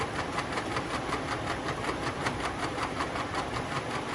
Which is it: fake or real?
fake